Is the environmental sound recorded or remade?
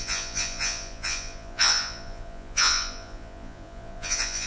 remade